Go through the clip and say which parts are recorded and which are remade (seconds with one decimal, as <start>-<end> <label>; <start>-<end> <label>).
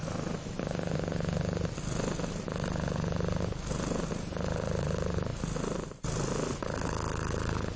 0.0-7.8 recorded